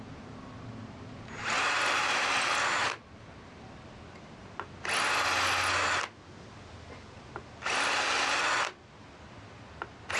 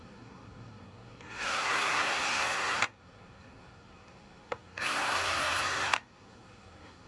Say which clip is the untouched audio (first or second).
first